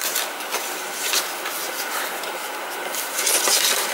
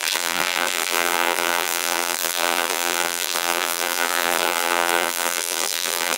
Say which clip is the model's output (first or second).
second